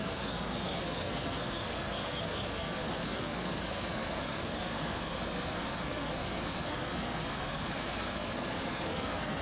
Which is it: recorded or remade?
remade